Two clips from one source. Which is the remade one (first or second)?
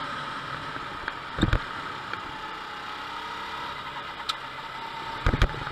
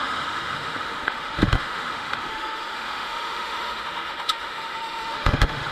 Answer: second